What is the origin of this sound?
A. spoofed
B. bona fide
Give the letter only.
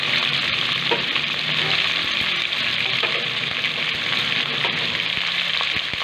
B